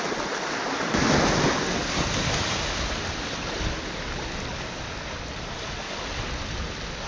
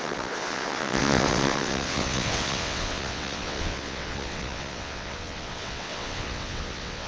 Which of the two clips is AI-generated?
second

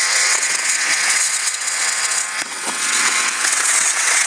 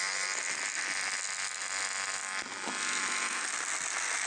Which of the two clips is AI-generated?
first